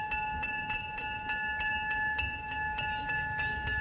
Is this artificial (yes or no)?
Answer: no